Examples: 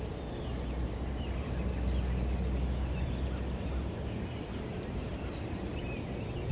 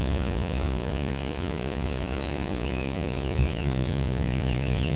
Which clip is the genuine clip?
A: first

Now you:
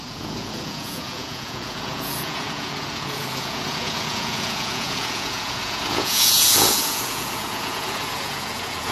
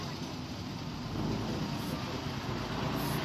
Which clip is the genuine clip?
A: second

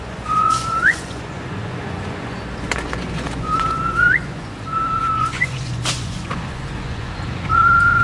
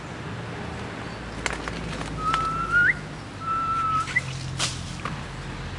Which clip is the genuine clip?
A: second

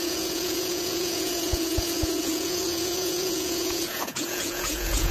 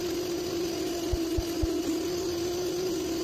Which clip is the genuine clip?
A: second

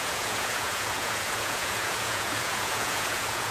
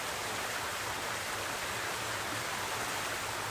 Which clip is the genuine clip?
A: second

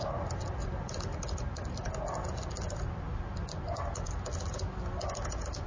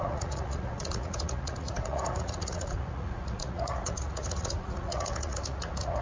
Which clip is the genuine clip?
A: first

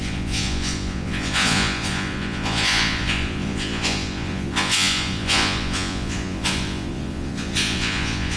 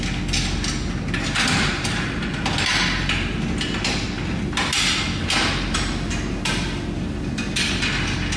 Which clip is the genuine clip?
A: second